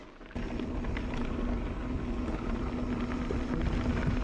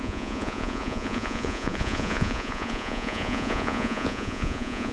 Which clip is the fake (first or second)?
second